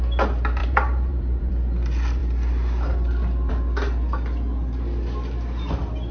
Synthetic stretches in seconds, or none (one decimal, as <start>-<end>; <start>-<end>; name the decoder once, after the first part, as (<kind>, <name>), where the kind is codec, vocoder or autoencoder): 0.6-1.5 (vocoder, BigVGAN v2)